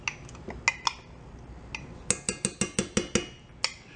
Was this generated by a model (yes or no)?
no